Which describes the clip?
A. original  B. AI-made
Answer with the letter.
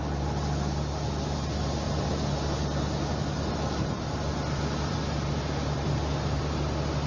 A